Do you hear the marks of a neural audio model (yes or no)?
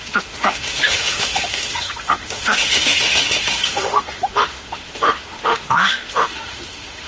yes